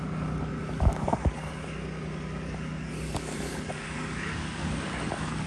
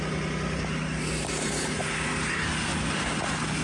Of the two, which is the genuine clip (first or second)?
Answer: second